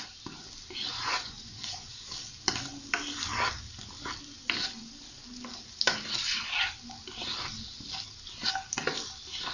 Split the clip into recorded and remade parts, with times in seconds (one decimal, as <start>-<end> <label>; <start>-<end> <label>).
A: 0.0-0.9 recorded; 0.9-2.1 remade; 2.1-9.5 recorded